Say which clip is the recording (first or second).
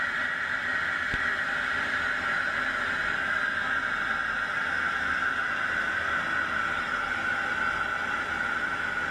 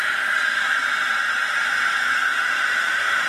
first